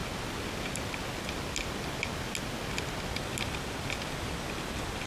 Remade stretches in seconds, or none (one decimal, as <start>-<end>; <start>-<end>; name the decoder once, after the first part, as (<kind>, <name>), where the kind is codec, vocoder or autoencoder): 3.1-5.1 (vocoder, BigVGAN v2)